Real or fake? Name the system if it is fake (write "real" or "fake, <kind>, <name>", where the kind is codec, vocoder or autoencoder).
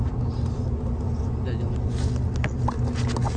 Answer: real